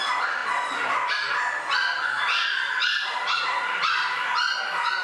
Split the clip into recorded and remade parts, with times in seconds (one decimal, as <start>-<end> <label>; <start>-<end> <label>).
0.0-5.0 recorded